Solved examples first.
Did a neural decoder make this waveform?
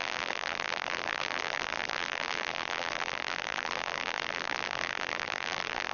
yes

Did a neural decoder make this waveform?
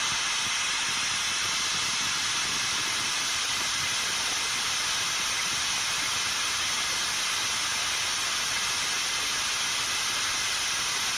no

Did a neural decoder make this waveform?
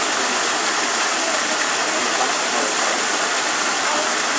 no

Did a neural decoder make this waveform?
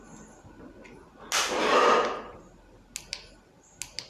no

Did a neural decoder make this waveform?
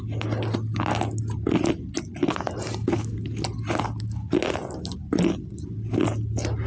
no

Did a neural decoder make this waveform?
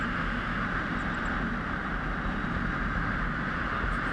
no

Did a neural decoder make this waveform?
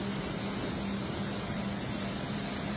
no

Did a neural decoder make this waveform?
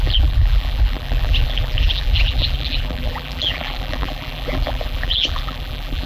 yes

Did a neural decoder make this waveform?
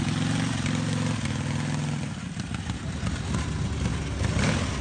no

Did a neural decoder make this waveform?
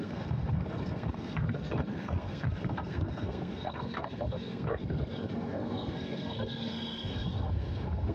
yes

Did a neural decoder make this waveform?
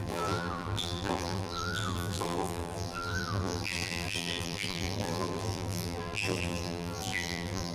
yes